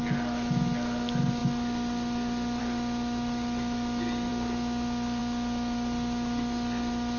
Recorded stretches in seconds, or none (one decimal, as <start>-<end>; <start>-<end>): 0.0-7.2